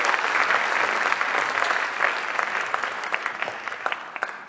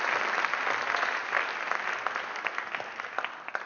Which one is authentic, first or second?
second